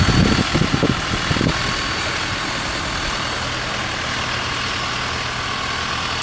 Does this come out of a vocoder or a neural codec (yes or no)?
no